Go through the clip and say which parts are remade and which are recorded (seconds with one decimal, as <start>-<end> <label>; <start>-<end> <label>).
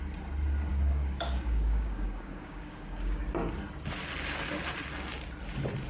0.0-0.7 recorded; 0.7-3.2 remade; 3.2-5.9 recorded